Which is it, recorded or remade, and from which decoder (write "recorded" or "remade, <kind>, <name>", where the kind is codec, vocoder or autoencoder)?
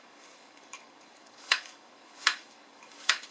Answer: remade, codec, DAC